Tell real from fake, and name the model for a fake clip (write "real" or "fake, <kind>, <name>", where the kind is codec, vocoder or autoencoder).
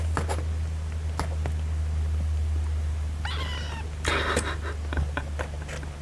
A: real